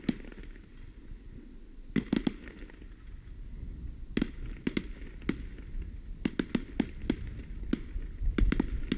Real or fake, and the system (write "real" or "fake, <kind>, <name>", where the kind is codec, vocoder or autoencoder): real